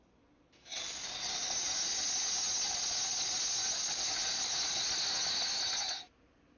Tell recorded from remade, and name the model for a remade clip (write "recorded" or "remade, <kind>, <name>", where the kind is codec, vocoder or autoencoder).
recorded